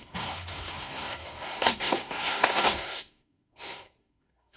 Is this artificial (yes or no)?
yes